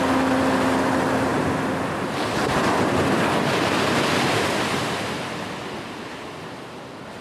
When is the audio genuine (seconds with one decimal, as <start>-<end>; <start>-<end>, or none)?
0.0-7.2